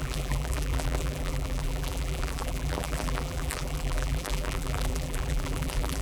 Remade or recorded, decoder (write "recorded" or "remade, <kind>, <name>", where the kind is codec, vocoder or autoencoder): remade, vocoder, BigVGAN v2